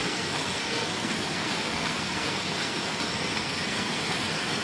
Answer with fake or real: fake